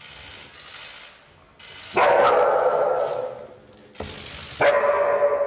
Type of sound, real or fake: real